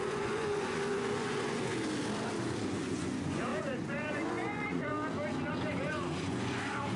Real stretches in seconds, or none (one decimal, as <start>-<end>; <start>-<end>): 1.7-2.4; 4.9-5.5